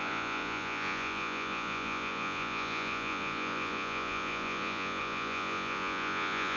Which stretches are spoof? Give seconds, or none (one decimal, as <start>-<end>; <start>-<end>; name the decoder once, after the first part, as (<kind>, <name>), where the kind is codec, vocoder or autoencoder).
0.0-6.6 (vocoder, Vocos)